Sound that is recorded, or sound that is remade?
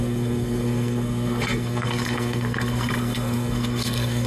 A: remade